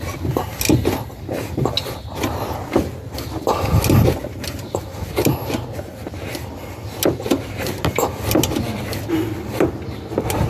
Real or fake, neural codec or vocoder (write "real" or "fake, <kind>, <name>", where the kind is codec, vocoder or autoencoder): real